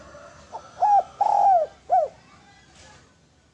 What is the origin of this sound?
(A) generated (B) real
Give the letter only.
B